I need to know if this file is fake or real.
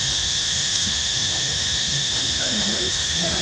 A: fake